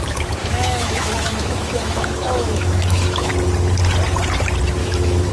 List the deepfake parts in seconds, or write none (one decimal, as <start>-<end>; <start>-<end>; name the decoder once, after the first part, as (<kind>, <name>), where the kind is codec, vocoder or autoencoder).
0.4-3.3 (autoencoder, DAC-VAE); 4.8-5.3